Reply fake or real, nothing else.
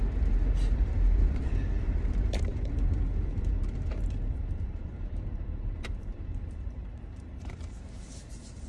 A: fake